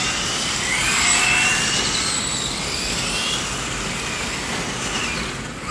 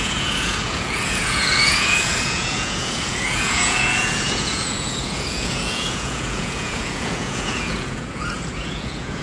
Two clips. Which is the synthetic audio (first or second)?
second